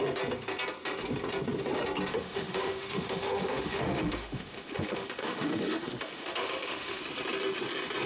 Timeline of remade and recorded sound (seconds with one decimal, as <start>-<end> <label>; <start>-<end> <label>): 0.0-2.1 recorded; 2.1-7.0 remade; 7.0-8.1 recorded